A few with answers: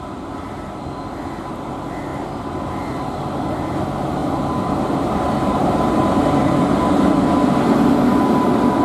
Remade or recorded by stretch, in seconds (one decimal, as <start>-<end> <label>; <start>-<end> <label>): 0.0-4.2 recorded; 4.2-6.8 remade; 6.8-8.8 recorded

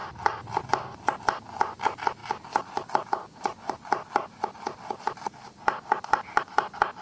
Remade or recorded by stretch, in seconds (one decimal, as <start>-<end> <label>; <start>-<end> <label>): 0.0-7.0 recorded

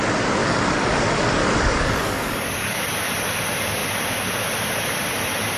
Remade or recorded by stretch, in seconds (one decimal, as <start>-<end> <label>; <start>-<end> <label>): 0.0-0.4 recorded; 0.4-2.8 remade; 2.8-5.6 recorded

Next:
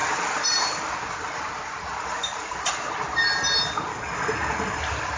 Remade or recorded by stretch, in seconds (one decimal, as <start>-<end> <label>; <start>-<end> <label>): 0.0-3.9 recorded; 3.9-4.8 remade; 4.8-5.2 recorded

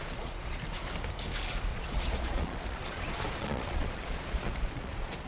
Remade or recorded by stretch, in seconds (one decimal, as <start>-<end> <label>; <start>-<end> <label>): 0.0-0.6 remade; 0.6-1.7 recorded; 1.7-5.3 remade

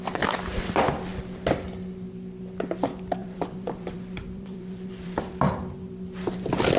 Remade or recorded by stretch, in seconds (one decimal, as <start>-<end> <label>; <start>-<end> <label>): 0.0-3.2 recorded; 3.2-5.3 remade; 5.3-6.8 recorded